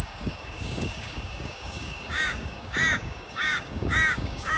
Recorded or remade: remade